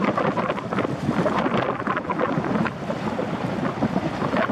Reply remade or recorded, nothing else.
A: recorded